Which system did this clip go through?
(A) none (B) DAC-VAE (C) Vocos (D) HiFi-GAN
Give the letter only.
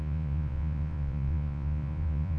C